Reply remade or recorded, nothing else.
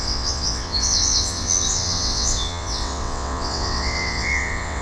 remade